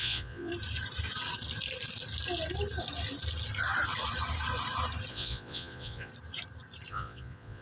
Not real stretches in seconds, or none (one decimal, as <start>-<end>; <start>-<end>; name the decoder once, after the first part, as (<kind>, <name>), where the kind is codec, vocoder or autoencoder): 0.0-0.5 (vocoder, Vocos); 5.1-6.1; 6.9-7.6